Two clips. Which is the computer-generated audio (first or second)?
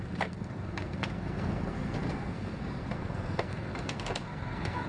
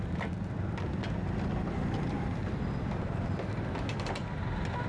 first